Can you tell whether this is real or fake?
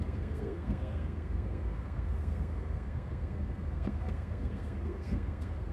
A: fake